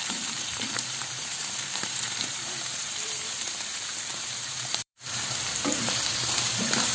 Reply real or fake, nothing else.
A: fake